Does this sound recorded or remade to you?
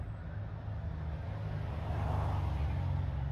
recorded